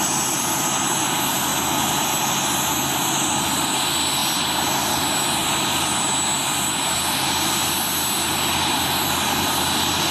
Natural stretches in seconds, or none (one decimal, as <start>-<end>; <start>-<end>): 0.0-10.1